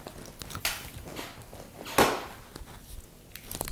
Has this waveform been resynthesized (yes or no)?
no